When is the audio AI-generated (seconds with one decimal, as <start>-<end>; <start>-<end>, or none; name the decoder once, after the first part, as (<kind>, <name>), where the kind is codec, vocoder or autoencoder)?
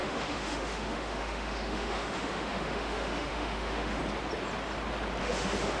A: 0.0-4.0 (autoencoder, DAC-VAE); 5.2-5.8